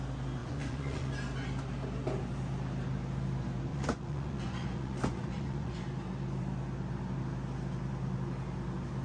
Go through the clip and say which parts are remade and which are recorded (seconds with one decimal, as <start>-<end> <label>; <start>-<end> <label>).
0.0-0.4 recorded; 0.4-1.1 remade; 1.1-3.7 recorded; 3.7-5.8 remade; 5.8-9.0 recorded

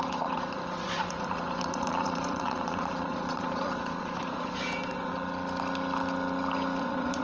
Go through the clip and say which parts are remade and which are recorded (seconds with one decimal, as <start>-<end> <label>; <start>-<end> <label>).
0.0-5.1 remade; 5.1-6.8 recorded; 6.8-7.2 remade

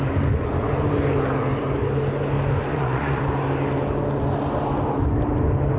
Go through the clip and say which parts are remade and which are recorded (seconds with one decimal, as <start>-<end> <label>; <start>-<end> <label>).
0.0-2.7 recorded; 2.7-3.2 remade; 3.2-5.8 recorded

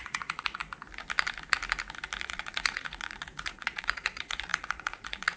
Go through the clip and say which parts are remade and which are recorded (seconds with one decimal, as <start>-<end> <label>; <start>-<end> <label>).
0.0-0.6 remade; 0.6-2.2 recorded; 2.2-5.4 remade

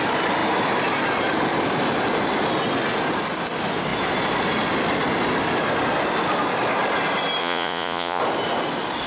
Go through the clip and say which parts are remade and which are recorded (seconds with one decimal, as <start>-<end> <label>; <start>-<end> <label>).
0.0-7.4 recorded; 7.4-8.2 remade; 8.2-9.1 recorded

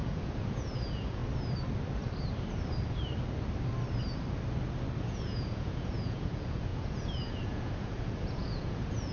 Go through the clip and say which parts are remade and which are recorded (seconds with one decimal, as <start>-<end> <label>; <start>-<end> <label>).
0.0-1.2 remade; 1.2-5.0 recorded; 5.0-9.1 remade

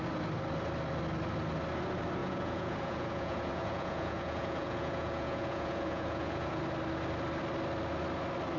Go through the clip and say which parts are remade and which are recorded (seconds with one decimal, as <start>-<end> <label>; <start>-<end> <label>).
0.0-2.2 recorded; 2.2-6.6 remade; 6.6-8.6 recorded